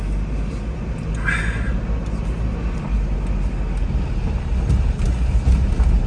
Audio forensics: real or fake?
real